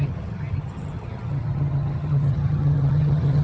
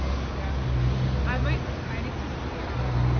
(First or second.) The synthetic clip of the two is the first